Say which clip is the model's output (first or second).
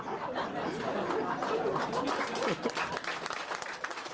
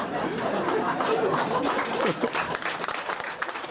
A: second